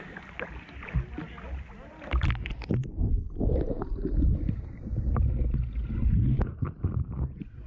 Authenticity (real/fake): real